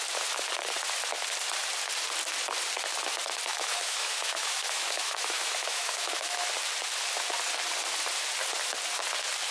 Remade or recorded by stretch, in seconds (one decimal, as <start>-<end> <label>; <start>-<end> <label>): 0.0-3.5 recorded; 3.5-6.5 remade; 6.5-9.5 recorded

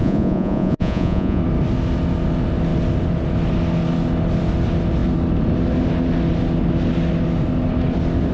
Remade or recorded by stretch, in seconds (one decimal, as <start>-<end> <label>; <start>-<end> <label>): 0.0-1.4 remade; 1.4-8.3 recorded

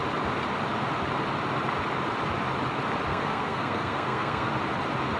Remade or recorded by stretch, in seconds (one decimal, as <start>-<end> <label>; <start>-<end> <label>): 0.0-3.1 recorded; 3.1-4.5 remade; 4.5-5.2 recorded